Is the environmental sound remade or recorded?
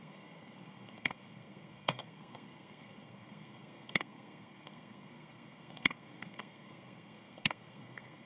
remade